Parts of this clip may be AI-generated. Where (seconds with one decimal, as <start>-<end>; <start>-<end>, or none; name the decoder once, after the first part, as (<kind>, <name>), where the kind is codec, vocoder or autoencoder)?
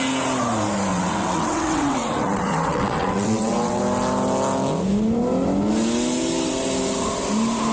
0.9-3.8 (vocoder, WaveNeXt)